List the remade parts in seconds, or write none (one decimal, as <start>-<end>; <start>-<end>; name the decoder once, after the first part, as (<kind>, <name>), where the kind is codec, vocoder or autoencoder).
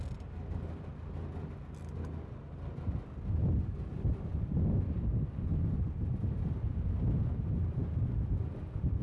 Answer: none